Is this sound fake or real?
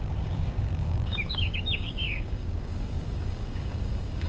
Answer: fake